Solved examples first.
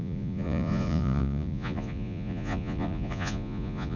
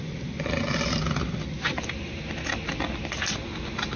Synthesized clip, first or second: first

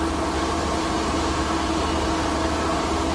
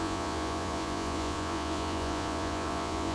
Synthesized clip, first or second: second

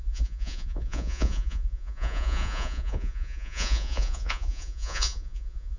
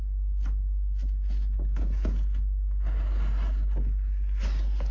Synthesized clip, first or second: first